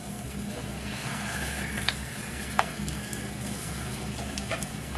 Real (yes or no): no